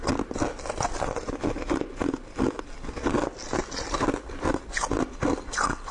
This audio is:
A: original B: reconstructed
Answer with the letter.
A